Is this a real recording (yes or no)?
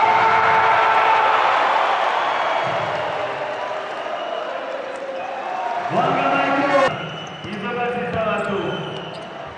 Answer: yes